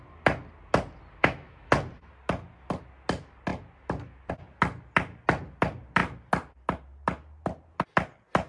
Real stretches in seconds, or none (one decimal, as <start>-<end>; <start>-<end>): 0.0-1.2; 1.7-8.5